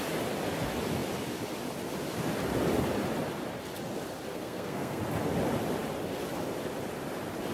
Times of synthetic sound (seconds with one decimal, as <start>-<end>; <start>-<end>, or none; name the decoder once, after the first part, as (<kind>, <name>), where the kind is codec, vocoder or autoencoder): 4.3-5.0 (codec, SNAC)